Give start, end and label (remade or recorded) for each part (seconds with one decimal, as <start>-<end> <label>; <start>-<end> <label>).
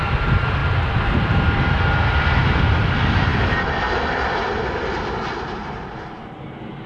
0.0-6.9 recorded